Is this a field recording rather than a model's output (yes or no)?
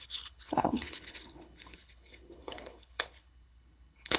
no